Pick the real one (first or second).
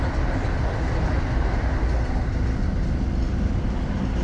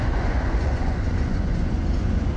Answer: first